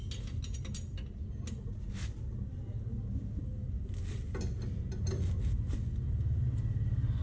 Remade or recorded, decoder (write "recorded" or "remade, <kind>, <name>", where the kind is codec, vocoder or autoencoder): recorded